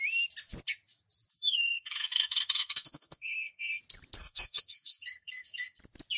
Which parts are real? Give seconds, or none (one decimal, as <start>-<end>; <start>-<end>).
0.0-1.3; 3.8-4.2; 5.8-6.2